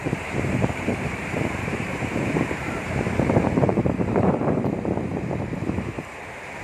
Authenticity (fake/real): fake